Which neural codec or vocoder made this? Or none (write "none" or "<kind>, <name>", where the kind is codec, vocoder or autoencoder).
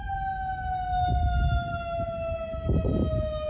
none